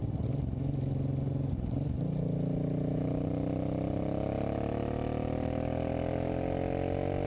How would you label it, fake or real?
real